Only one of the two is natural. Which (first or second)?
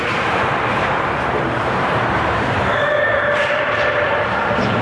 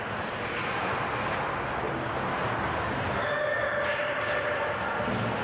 second